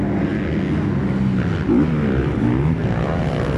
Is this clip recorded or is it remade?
recorded